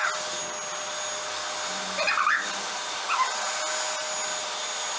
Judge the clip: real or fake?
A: real